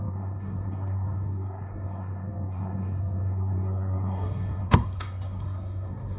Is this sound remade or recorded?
remade